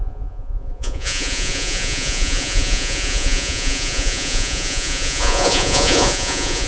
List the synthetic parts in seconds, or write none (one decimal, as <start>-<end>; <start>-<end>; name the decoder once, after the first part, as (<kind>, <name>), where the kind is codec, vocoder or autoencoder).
0.0-6.7 (vocoder, Vocos)